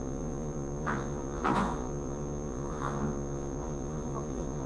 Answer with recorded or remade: remade